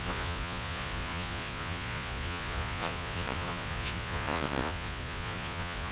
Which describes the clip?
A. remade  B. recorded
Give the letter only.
A